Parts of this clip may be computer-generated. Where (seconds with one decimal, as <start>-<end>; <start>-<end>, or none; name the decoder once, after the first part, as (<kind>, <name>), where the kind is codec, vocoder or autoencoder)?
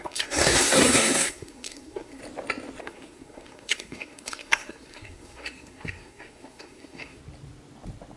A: 0.0-2.2 (codec, SNAC); 2.8-7.2